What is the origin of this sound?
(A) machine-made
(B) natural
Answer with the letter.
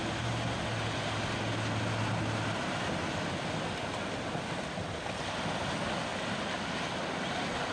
B